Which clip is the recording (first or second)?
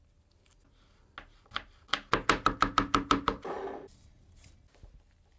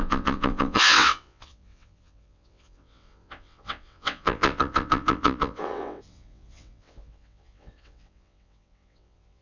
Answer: first